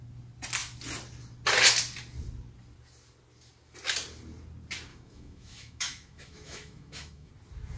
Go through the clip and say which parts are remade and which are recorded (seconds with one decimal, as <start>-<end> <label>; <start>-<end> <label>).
0.0-4.9 recorded; 4.9-7.3 remade; 7.3-7.8 recorded